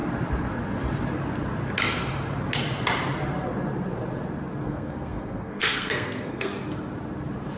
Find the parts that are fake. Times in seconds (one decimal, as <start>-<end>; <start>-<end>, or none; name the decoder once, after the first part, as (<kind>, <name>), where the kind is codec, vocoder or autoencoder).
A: 4.6-6.5 (codec, SNAC)

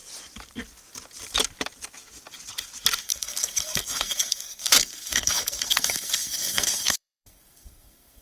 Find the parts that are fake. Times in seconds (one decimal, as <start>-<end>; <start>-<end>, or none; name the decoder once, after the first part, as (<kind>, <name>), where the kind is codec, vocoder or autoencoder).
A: 3.0-8.2 (codec, SNAC)